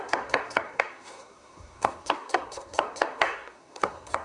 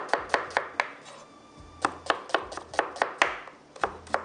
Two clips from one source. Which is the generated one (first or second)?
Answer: first